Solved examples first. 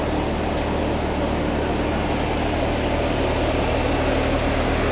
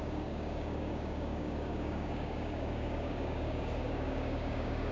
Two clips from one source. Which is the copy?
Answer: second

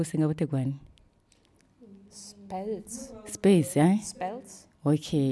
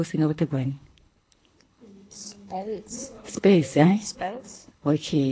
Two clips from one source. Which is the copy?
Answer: second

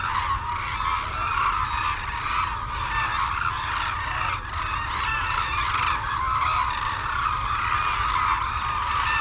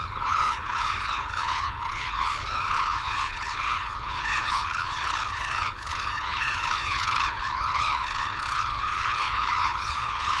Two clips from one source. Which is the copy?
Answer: second